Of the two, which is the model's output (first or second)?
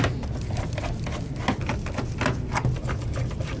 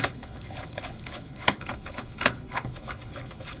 second